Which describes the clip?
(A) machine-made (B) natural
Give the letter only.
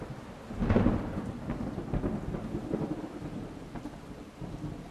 B